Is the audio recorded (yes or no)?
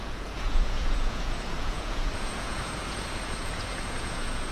no